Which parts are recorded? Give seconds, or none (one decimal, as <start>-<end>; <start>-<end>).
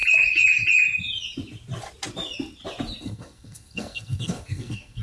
0.0-3.0